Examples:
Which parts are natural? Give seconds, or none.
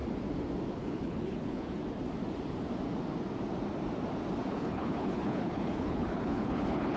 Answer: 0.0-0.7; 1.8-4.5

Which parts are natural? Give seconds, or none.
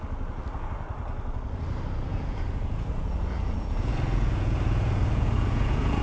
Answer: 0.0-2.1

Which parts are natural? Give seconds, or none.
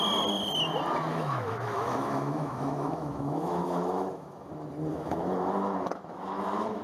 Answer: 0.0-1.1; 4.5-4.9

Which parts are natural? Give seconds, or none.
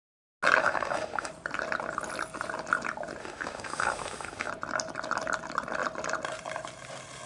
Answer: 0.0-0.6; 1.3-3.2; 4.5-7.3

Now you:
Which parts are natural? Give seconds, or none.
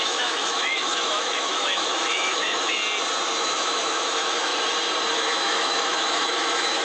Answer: 2.8-3.4; 4.5-5.1